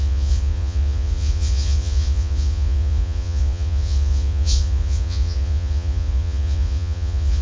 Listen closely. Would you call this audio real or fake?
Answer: fake